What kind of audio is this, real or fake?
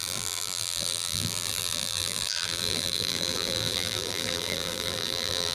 fake